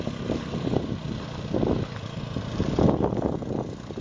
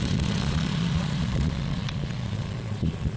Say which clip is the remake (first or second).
second